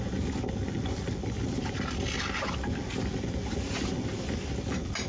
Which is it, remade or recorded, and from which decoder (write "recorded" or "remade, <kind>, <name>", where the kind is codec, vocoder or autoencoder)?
recorded